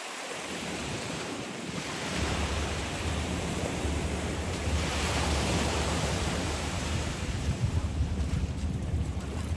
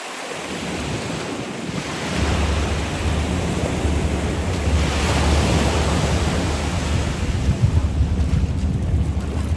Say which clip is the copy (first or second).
first